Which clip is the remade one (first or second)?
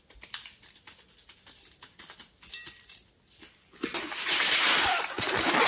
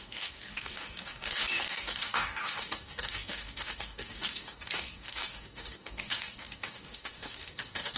second